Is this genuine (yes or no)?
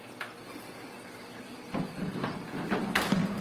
yes